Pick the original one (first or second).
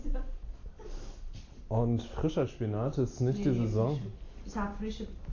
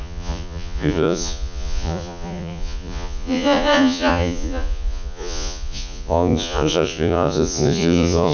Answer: first